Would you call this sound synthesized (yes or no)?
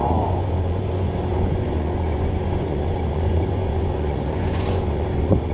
yes